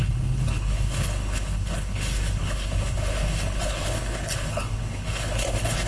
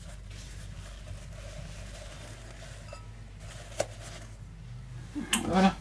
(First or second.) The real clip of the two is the second